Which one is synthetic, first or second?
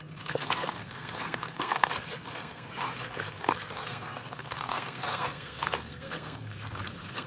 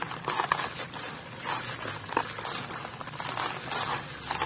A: first